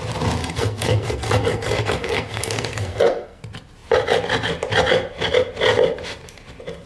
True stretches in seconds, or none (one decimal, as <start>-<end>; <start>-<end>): 0.0-0.4; 3.4-6.9